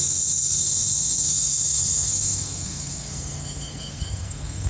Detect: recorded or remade remade